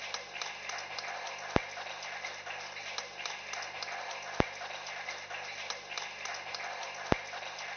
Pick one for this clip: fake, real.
real